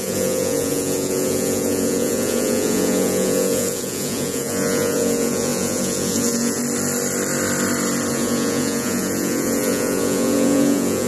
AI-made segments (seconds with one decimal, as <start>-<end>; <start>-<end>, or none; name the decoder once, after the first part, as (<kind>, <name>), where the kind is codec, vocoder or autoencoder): 0.0-6.6 (vocoder, Vocos); 8.1-11.1